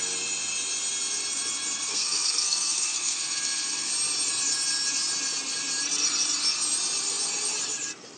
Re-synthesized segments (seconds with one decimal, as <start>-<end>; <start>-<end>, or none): 1.9-3.9